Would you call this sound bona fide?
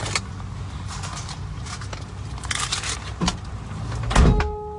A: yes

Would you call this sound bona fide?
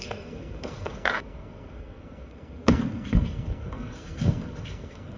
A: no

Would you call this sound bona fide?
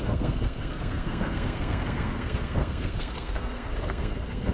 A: no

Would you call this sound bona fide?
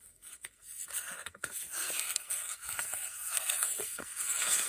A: no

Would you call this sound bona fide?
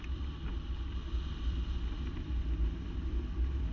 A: yes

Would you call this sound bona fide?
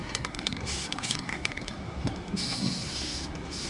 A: no